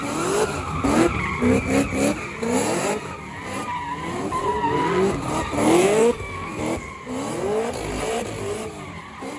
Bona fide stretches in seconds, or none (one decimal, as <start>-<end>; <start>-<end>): 0.0-5.8; 6.6-9.4